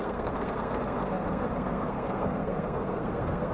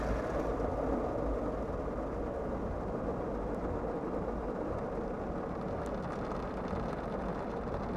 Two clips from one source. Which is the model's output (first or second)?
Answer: first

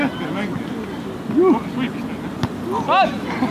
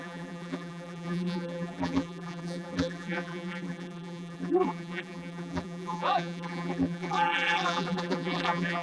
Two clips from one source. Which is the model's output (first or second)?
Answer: second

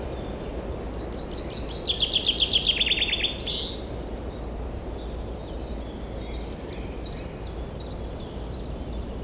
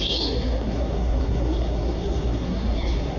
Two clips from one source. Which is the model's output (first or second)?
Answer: second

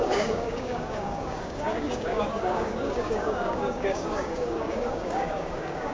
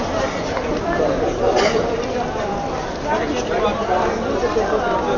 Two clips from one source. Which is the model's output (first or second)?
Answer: first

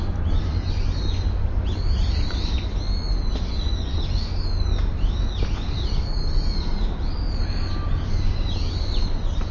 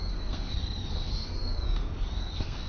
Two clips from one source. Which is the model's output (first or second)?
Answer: second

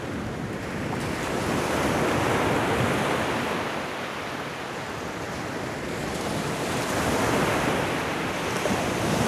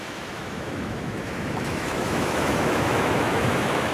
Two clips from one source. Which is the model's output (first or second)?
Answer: second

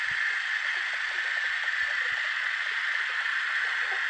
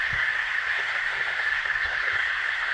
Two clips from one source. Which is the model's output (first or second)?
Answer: second